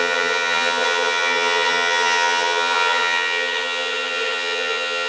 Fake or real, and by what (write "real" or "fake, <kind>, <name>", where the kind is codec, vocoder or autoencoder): fake, vocoder, HiFi-GAN